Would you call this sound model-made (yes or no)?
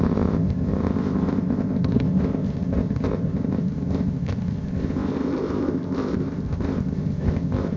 yes